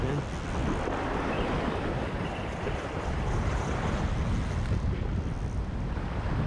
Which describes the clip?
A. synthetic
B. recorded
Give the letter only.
B